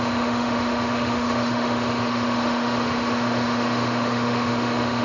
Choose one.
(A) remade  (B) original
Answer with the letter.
A